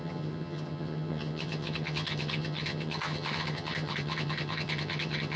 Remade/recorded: remade